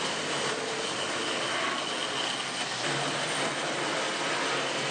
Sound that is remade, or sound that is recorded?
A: recorded